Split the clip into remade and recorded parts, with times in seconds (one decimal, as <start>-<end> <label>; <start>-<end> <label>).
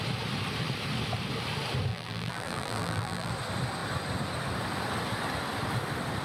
0.0-1.9 recorded; 1.9-3.3 remade; 3.3-6.2 recorded